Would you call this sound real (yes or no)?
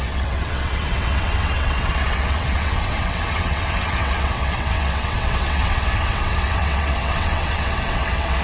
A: no